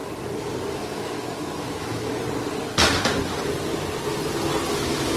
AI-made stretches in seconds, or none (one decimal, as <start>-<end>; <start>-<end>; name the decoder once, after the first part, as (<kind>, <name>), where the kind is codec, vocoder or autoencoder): 0.7-2.1 (autoencoder, DAC-VAE); 4.7-5.2